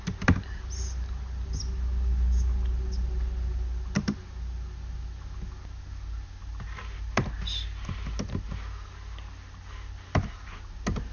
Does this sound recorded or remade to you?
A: recorded